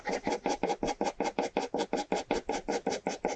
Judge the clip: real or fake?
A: fake